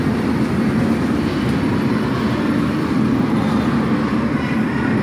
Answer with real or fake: real